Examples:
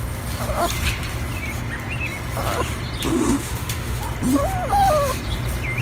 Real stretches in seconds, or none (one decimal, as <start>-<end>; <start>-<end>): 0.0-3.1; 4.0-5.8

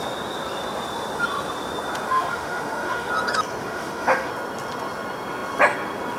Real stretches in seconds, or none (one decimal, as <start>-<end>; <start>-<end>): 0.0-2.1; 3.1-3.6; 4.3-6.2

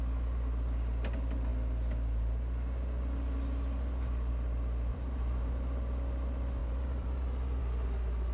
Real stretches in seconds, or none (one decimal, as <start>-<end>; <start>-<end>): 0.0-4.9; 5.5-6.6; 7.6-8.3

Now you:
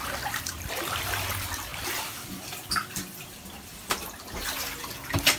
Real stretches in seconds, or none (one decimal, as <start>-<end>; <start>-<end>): none